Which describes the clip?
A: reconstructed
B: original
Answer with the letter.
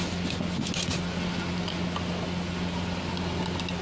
B